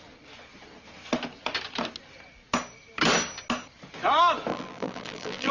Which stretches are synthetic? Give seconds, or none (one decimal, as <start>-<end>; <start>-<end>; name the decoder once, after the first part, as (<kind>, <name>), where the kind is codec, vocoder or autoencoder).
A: 4.5-5.5 (vocoder, BigVGAN v2)